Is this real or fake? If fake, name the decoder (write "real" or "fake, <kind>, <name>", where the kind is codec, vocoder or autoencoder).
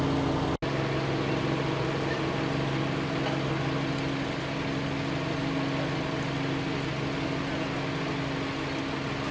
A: real